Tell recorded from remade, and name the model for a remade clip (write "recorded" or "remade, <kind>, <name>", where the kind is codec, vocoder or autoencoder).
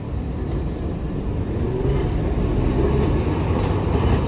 recorded